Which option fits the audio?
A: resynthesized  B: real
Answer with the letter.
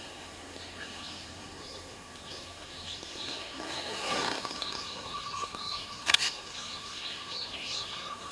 A